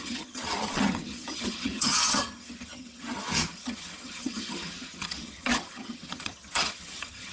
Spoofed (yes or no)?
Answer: yes